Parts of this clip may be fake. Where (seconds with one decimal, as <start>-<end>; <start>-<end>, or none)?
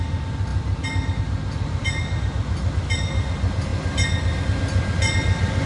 none